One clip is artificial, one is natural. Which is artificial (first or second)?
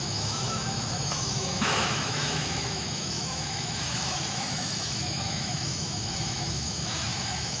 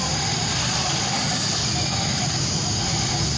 first